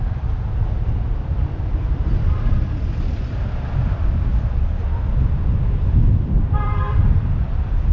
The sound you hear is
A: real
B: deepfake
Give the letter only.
B